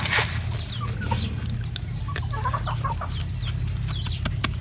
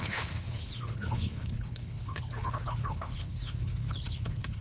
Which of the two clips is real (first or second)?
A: first